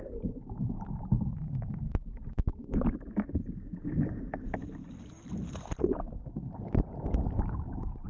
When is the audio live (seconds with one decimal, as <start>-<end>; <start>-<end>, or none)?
0.0-1.1; 1.9-8.1